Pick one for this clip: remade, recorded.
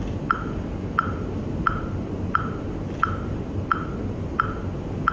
recorded